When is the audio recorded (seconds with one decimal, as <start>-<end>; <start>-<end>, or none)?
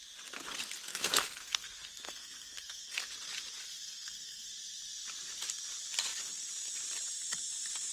0.0-0.9; 3.1-3.6; 4.5-7.9